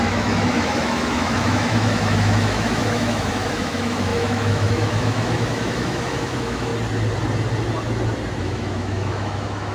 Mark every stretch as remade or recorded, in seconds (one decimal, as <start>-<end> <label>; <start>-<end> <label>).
0.0-6.7 remade; 6.7-8.4 recorded; 8.4-9.7 remade